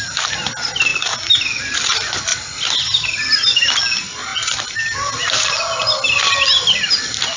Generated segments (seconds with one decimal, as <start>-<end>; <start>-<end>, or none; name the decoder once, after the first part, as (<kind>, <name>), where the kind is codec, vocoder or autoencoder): 2.3-3.8 (vocoder, BigVGAN v2)